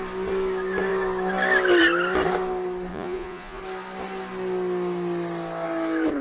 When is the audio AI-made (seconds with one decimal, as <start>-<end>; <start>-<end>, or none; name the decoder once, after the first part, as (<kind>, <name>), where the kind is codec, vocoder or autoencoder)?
2.9-3.6 (vocoder, Vocos)